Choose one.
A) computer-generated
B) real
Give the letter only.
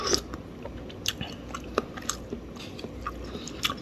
B